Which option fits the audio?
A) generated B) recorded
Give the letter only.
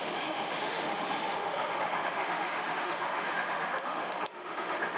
A